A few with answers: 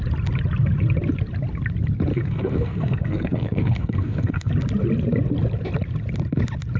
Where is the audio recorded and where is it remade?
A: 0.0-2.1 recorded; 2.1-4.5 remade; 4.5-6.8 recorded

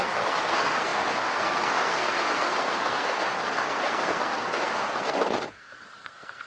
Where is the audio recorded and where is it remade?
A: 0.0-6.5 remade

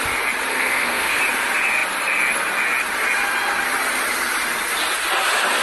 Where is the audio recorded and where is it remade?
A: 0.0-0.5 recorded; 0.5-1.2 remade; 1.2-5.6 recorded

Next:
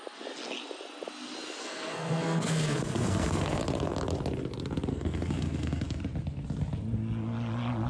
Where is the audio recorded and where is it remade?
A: 0.0-1.6 recorded; 1.6-3.6 remade; 3.6-4.9 recorded; 4.9-6.0 remade; 6.0-7.9 recorded

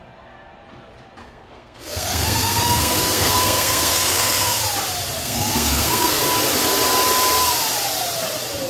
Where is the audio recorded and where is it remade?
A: 0.0-1.2 recorded; 1.2-4.6 remade; 4.6-5.2 recorded; 5.2-6.2 remade; 6.2-8.7 recorded

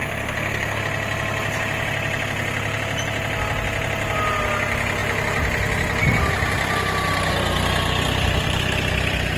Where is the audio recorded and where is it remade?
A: 0.0-0.8 remade; 0.8-9.4 recorded